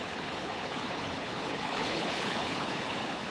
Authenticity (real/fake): fake